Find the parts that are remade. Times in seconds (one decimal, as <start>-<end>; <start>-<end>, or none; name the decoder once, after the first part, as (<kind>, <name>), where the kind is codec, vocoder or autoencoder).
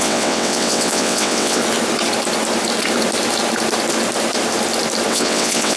0.0-1.6 (vocoder, WaveNeXt); 5.1-5.8